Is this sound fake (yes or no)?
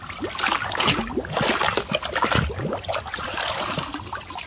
no